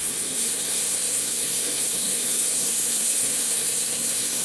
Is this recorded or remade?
remade